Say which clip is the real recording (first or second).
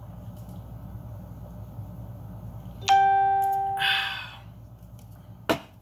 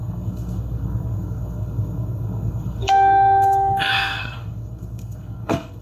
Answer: first